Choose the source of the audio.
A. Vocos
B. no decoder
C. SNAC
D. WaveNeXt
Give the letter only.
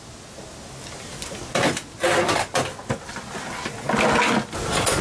B